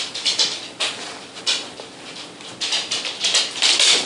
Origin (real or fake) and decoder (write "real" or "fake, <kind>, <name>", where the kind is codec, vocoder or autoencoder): real